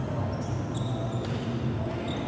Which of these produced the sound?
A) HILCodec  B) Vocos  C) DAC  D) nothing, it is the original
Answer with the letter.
D